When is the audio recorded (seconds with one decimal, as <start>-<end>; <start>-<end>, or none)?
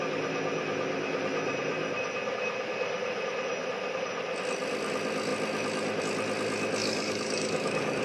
0.0-6.8